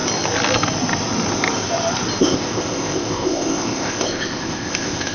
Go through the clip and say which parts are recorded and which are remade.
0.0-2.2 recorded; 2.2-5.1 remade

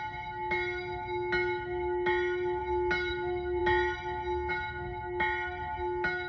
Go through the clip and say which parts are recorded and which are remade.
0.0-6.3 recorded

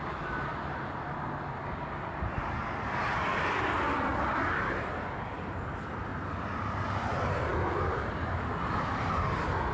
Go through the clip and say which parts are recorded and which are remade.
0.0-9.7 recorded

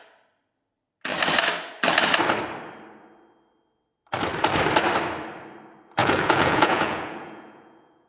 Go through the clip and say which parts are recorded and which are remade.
0.0-6.0 recorded; 6.0-8.1 remade

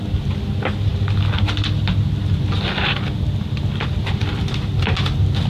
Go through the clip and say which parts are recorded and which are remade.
0.0-5.5 recorded

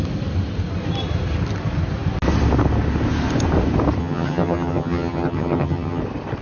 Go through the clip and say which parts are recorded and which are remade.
0.0-4.0 recorded; 4.0-6.0 remade; 6.0-6.4 recorded

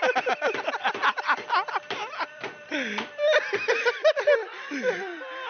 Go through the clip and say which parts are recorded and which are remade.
0.0-5.5 recorded

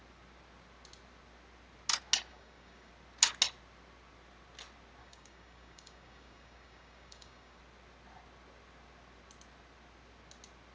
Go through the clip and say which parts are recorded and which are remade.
0.0-2.3 recorded; 2.3-2.9 remade; 2.9-5.0 recorded; 5.0-7.6 remade; 7.6-10.7 recorded